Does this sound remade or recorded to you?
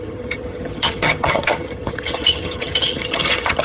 remade